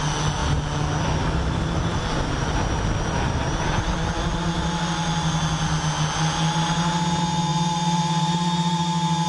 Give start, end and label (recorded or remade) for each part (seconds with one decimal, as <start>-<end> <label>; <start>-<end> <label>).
0.0-7.5 recorded; 7.5-8.8 remade; 8.8-9.3 recorded